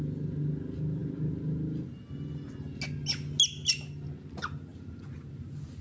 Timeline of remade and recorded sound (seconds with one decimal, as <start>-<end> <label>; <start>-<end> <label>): 0.0-5.8 recorded